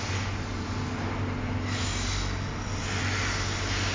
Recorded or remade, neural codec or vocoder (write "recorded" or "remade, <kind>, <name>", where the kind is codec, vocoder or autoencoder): recorded